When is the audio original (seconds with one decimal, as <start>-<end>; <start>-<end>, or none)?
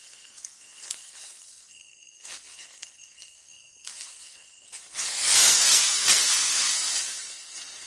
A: none